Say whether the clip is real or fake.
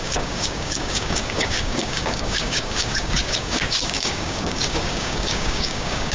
fake